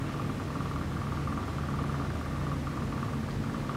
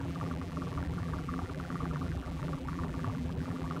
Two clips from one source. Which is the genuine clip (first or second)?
first